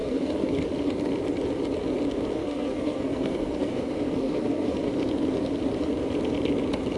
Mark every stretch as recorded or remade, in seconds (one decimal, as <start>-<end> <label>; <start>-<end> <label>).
0.0-0.6 remade; 0.6-2.4 recorded; 2.4-4.9 remade; 4.9-7.0 recorded